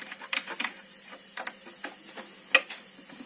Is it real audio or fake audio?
real